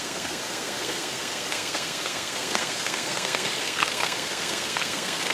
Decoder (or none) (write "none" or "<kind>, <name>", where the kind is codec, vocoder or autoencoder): codec, SNAC